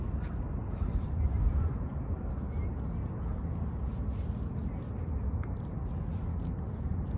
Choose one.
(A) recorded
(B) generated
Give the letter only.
A